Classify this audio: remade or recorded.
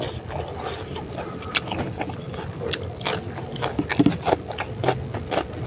recorded